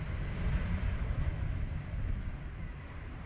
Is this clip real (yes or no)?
yes